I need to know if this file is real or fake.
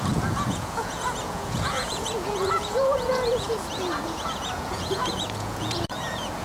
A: fake